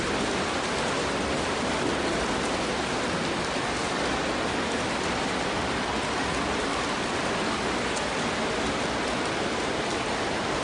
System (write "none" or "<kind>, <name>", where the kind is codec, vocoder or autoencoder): none